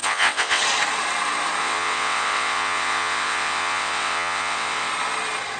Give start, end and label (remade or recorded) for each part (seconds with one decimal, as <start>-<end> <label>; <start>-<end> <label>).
0.0-0.6 remade; 0.6-1.6 recorded; 1.6-4.9 remade; 4.9-5.6 recorded